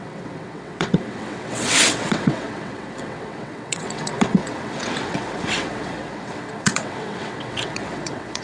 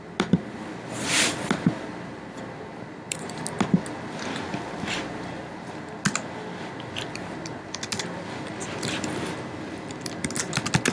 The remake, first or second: first